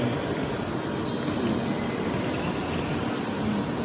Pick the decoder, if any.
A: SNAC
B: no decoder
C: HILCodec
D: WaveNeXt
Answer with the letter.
B